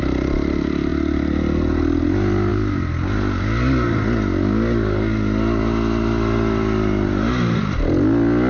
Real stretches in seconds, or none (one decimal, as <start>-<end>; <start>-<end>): 0.0-8.5